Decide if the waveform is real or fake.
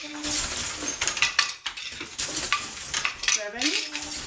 real